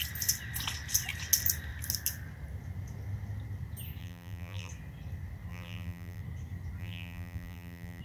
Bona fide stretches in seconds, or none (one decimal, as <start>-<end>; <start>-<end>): 0.0-4.0; 4.7-5.5; 6.2-6.8